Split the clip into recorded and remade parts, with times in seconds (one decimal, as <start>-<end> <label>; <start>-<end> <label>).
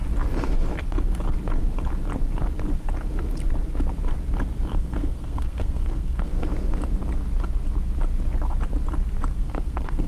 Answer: 0.0-4.7 recorded; 4.7-6.4 remade; 6.4-9.3 recorded; 9.3-10.1 remade